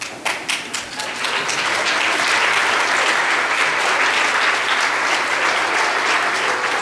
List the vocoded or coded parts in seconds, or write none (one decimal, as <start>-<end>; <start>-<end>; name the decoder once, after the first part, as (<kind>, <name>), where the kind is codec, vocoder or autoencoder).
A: none